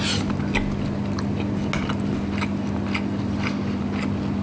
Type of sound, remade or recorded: recorded